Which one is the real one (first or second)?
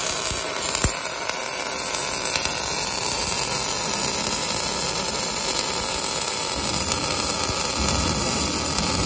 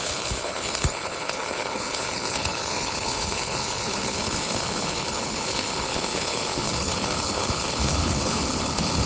first